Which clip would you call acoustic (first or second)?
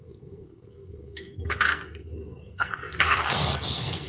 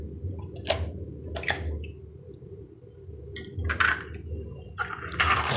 second